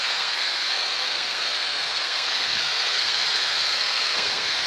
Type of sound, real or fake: fake